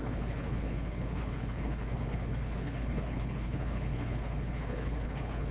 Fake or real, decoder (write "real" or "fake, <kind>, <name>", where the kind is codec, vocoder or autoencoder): fake, codec, HILCodec